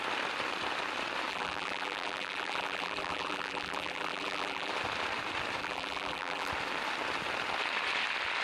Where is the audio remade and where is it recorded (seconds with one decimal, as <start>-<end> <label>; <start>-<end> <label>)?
0.0-1.3 recorded; 1.3-4.7 remade; 4.7-5.6 recorded; 5.6-6.5 remade; 6.5-8.4 recorded